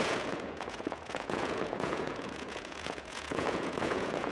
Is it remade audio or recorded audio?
remade